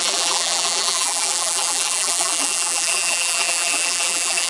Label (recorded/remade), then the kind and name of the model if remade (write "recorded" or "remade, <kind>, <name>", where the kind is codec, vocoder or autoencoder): remade, vocoder, BigVGAN v2